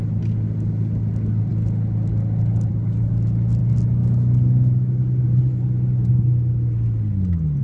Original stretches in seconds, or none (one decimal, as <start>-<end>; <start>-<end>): 0.0-7.6

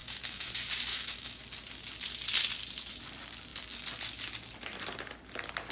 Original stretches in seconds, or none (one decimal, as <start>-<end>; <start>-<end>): 0.5-0.9; 1.4-5.7